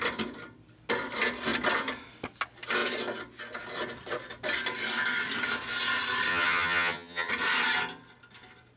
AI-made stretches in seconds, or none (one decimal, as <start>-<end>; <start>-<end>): 6.3-7.3